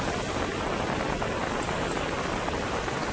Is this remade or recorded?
recorded